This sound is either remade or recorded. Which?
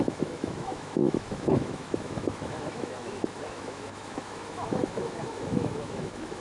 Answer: remade